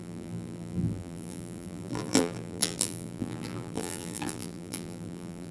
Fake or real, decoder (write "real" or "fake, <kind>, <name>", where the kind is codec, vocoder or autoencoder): fake, vocoder, BigVGAN v2